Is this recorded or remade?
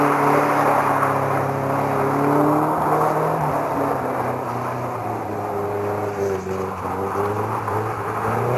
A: recorded